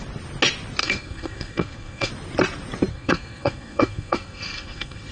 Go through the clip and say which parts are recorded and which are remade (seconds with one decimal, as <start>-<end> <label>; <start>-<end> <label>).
0.0-0.8 recorded; 0.8-2.1 remade; 2.1-2.9 recorded; 2.9-5.1 remade